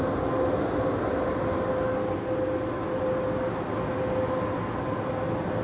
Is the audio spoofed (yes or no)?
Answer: no